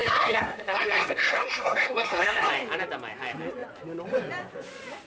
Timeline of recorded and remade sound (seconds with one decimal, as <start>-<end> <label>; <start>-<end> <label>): 0.0-2.5 remade; 2.5-5.1 recorded